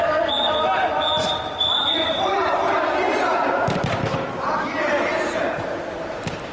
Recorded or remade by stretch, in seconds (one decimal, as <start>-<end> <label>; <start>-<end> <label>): 0.0-1.2 recorded; 1.2-2.6 remade; 2.6-6.5 recorded